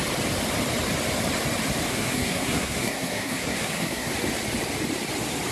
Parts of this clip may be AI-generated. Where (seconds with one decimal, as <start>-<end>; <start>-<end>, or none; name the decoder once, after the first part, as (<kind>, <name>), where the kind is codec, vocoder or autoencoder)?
1.9-4.1 (codec, SNAC)